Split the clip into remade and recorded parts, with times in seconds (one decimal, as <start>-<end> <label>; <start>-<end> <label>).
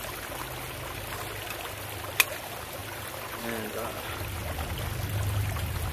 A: 0.0-5.9 recorded